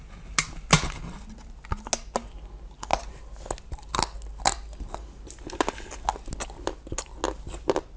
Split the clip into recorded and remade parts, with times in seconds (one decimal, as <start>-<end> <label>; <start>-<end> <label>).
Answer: 0.0-8.0 recorded